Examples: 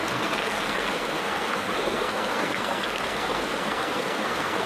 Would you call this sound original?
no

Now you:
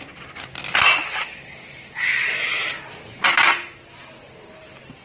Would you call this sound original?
yes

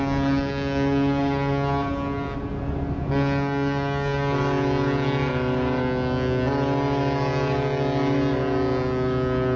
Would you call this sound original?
yes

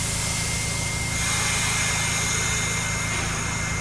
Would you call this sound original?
yes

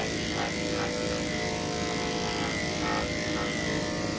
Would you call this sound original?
yes